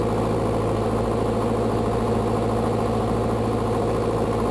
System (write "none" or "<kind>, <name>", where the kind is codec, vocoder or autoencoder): none